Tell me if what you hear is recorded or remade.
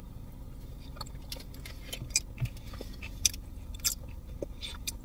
recorded